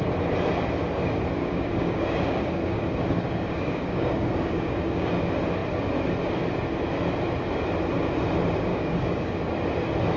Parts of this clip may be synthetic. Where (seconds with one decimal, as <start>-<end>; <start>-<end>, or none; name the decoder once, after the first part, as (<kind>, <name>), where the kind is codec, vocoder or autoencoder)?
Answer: 1.4-5.1 (codec, DAC); 8.7-9.4